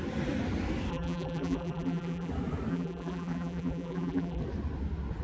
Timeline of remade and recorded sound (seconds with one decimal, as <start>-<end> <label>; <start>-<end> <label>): 0.0-0.9 recorded; 0.9-2.3 remade; 2.3-2.7 recorded; 2.7-4.4 remade; 4.4-5.2 recorded